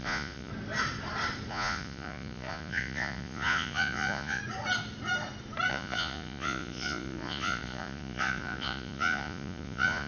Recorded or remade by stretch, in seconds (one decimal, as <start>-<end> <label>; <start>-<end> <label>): 0.0-0.5 remade; 0.5-1.5 recorded; 1.5-4.4 remade; 4.4-5.7 recorded; 5.7-10.1 remade